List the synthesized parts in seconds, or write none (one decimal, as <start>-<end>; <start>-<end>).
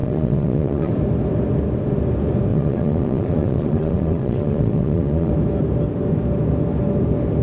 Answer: 0.0-0.9; 2.5-5.3